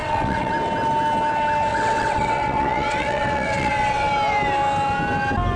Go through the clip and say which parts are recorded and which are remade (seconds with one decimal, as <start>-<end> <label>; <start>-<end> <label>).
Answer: 0.0-0.5 remade; 0.5-1.7 recorded; 1.7-4.1 remade; 4.1-5.6 recorded